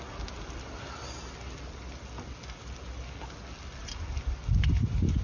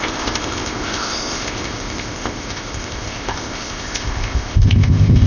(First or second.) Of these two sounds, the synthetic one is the second